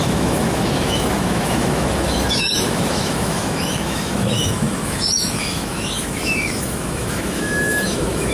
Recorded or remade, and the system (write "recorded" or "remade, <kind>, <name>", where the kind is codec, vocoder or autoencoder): remade, autoencoder, DAC-VAE